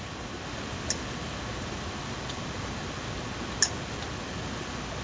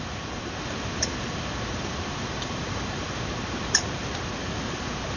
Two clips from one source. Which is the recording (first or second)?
first